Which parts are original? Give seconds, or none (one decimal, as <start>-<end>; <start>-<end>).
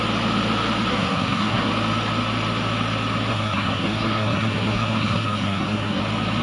0.0-0.9; 1.7-3.3; 6.0-6.4